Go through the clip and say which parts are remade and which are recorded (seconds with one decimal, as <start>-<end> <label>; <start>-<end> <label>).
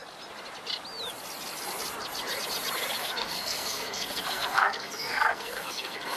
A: 0.0-3.0 recorded; 3.0-6.2 remade